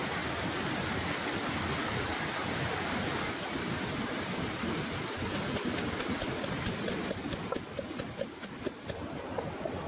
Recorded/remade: recorded